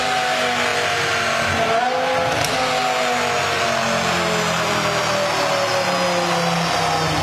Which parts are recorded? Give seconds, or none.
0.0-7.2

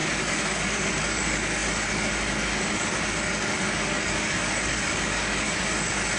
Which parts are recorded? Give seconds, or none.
none

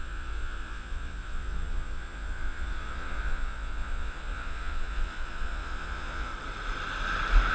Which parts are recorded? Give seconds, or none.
6.3-7.5

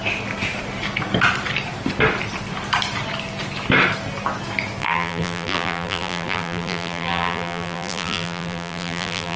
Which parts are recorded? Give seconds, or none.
0.0-4.8

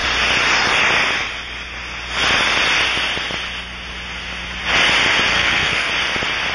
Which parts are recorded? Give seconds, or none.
0.0-5.3; 5.9-6.5